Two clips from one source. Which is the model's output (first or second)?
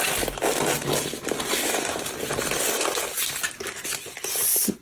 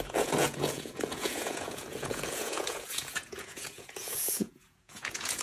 second